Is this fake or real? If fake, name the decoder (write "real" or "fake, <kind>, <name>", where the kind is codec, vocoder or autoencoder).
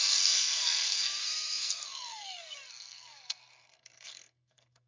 fake, codec, SNAC